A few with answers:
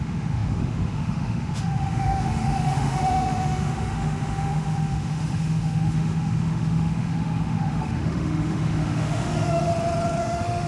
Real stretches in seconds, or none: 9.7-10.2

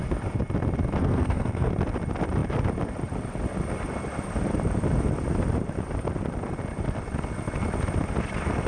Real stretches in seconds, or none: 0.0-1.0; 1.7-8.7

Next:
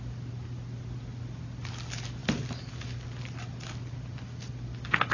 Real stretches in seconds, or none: 0.0-5.1